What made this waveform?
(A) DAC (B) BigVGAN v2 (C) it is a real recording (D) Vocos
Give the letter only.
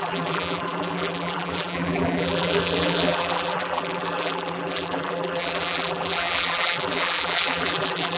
B